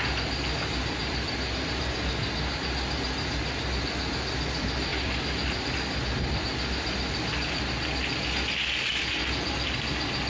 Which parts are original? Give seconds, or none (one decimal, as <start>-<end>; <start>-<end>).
0.0-1.0; 1.8-4.9; 5.7-8.9; 9.9-10.3